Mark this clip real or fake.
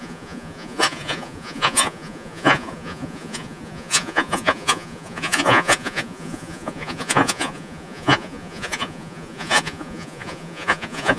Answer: fake